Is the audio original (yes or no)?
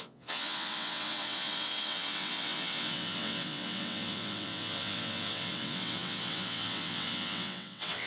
no